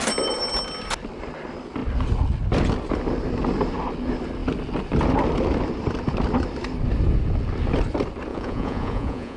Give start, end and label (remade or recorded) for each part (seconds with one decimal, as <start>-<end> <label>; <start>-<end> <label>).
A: 0.0-8.3 recorded; 8.3-9.4 remade